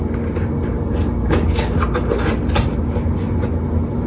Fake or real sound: real